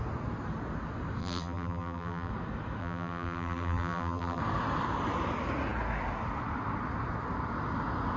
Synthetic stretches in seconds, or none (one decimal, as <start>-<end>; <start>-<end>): 1.2-2.3; 2.8-4.4